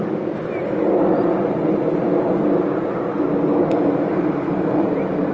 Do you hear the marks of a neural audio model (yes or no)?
no